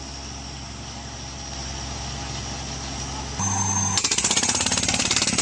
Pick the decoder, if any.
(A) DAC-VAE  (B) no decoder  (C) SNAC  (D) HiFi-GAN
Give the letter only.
B